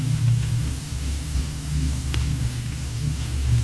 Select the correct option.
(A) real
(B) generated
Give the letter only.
B